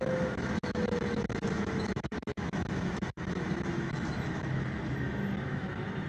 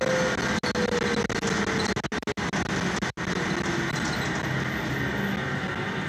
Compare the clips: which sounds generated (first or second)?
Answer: first